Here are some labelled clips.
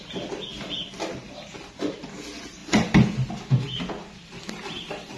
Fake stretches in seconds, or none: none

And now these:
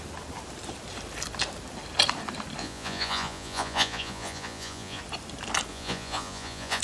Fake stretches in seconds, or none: 2.6-5.0; 5.7-6.8

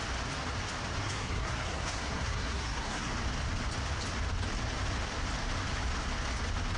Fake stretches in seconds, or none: 1.0-3.1

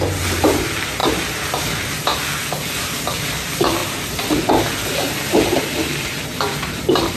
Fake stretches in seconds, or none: 0.0-2.1; 2.8-7.2

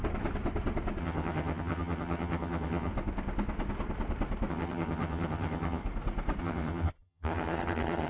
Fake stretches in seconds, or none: 1.0-2.9; 4.5-5.8; 6.4-8.1

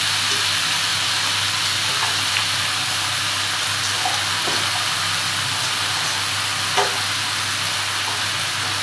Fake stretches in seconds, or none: none

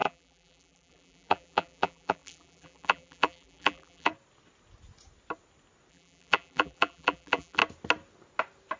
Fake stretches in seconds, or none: 0.0-4.1; 5.9-7.6